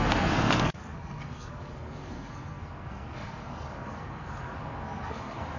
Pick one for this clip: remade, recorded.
remade